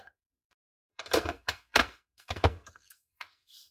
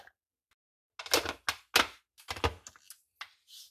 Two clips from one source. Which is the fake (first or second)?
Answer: first